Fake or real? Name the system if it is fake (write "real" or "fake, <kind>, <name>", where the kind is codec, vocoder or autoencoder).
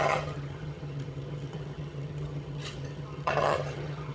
fake, vocoder, HiFi-GAN